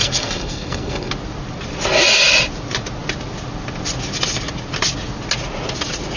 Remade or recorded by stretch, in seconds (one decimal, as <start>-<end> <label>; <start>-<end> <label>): 0.0-1.1 remade; 1.1-6.2 recorded